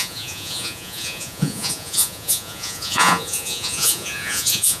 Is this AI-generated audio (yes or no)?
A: yes